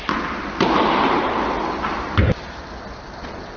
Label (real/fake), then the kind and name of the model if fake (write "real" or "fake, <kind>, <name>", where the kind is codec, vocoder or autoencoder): real